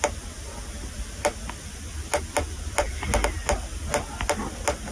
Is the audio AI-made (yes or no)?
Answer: no